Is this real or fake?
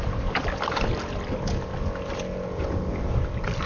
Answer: real